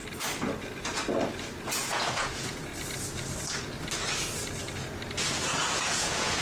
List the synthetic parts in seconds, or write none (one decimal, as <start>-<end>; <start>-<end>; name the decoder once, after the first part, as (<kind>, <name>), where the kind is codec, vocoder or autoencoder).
1.6-2.7 (vocoder, Vocos); 5.3-6.4